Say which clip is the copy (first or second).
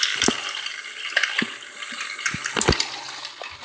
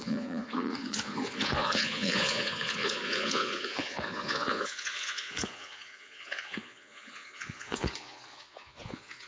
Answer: second